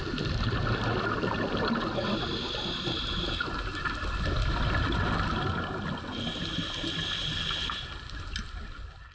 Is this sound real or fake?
real